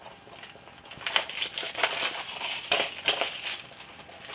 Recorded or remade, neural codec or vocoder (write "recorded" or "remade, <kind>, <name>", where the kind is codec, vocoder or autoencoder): recorded